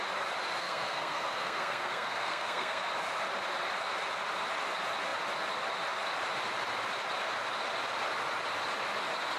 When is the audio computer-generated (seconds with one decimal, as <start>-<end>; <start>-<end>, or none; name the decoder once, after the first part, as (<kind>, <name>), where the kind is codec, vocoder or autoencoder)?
0.6-2.9 (codec, SNAC)